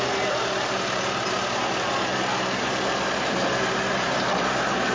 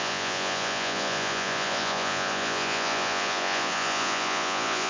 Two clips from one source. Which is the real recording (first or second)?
first